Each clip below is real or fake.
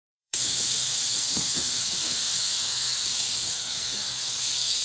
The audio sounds fake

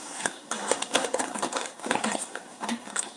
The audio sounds fake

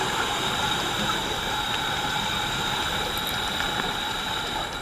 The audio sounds fake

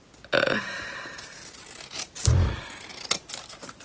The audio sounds real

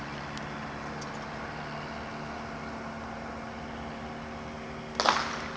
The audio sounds real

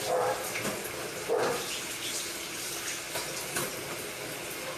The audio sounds real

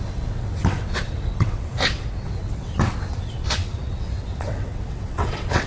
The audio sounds fake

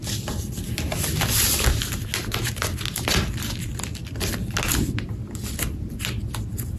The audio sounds real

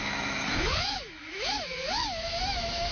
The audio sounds fake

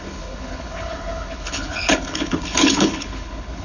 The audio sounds fake